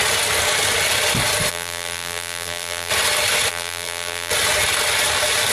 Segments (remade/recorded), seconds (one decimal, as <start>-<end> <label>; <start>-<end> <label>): 0.0-1.5 recorded; 1.5-2.9 remade; 2.9-3.5 recorded; 3.5-4.3 remade; 4.3-5.5 recorded